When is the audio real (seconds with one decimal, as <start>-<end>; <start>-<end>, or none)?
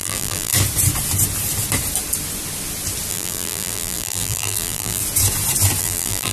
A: 0.5-3.1; 5.0-5.8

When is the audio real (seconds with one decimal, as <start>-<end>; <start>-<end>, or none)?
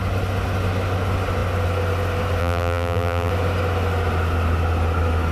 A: 0.0-2.4; 3.3-5.3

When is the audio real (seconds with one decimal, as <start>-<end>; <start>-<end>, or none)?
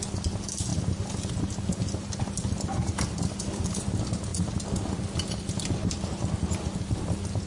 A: 0.0-7.5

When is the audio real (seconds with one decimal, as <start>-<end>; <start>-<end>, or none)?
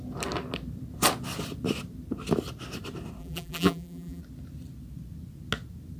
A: 0.0-3.2; 4.2-6.0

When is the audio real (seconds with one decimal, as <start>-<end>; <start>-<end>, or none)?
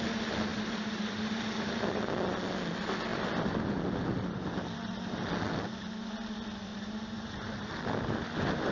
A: 0.0-0.5; 1.7-6.7; 7.7-8.7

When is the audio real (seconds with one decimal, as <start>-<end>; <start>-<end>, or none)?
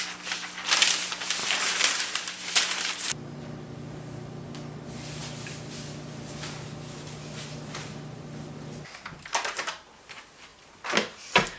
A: 0.0-1.4; 4.4-9.3; 9.9-11.6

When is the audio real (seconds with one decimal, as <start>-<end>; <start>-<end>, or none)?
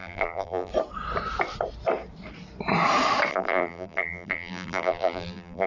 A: 0.7-3.3